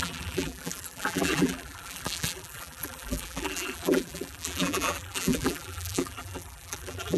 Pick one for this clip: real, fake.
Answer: fake